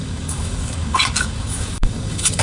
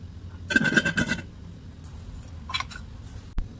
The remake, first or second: first